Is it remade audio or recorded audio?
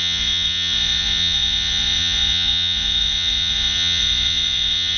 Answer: remade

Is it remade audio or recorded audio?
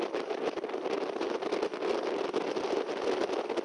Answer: recorded